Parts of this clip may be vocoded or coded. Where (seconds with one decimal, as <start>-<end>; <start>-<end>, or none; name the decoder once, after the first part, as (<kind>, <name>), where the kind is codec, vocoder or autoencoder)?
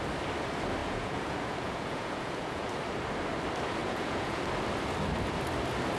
0.8-2.7 (vocoder, Vocos); 3.8-4.4